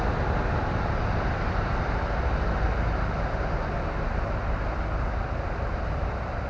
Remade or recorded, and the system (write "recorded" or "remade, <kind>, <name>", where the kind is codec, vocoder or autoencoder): recorded